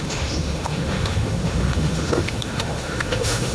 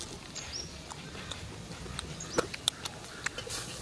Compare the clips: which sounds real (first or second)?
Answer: second